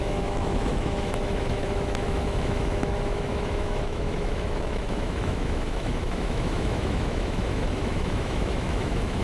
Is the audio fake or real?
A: fake